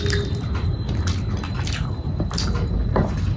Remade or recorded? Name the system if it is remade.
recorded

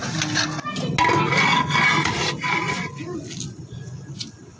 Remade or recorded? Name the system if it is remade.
recorded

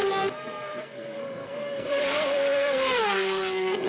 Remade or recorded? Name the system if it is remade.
remade, codec, SNAC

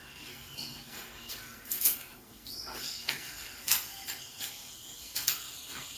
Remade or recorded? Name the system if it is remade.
remade, codec, SNAC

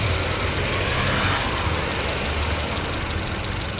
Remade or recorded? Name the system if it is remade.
recorded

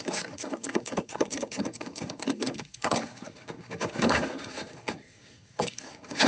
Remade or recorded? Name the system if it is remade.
remade, codec, SNAC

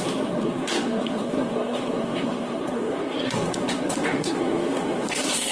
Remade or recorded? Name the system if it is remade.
remade, codec, SNAC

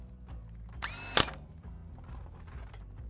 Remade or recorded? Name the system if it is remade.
recorded